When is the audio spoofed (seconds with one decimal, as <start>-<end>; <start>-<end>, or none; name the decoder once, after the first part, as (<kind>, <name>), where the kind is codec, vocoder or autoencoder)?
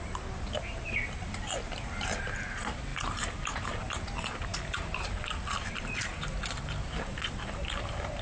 2.9-3.8 (vocoder, BigVGAN v2)